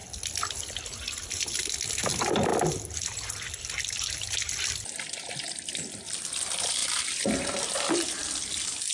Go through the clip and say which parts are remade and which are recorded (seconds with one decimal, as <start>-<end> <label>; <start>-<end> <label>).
0.0-2.0 recorded; 2.0-2.5 remade; 2.5-5.7 recorded; 5.7-8.9 remade